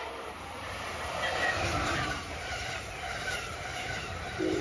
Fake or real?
fake